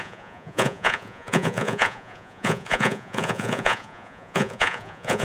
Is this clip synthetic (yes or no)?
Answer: yes